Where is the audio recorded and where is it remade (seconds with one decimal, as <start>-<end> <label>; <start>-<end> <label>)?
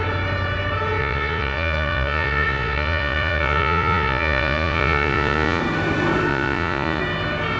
0.0-1.0 recorded; 1.0-5.6 remade; 5.6-6.3 recorded; 6.3-7.0 remade; 7.0-7.6 recorded